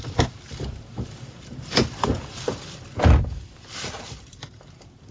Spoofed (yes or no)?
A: yes